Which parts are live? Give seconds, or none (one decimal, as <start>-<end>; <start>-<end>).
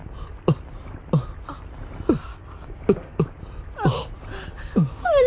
0.0-2.3; 3.4-4.5